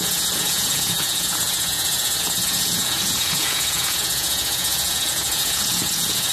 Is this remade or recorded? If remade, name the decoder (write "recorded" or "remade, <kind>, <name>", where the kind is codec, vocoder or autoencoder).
remade, vocoder, Vocos